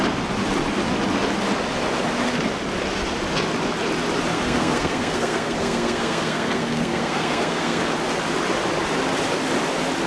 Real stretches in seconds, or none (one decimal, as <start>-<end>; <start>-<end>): 0.0-4.3; 7.8-10.1